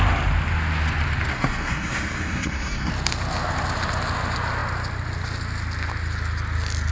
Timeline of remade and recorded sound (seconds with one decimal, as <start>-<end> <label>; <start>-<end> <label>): 0.0-1.3 recorded; 1.3-2.9 remade; 2.9-6.9 recorded